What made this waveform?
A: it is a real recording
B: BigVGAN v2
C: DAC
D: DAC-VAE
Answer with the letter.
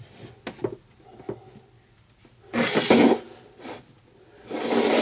A